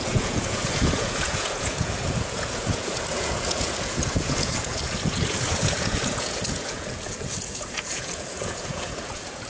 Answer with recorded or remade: remade